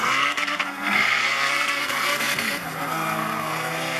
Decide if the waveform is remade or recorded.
remade